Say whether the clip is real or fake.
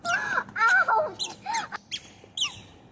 real